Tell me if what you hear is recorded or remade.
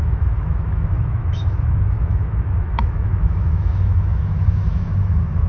remade